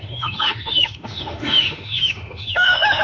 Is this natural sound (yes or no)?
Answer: no